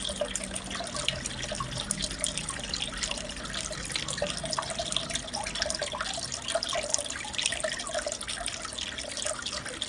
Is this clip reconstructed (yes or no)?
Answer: no